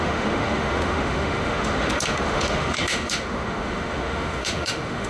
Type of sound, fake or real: fake